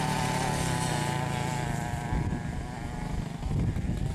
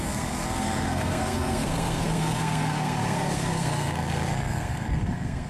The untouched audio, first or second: first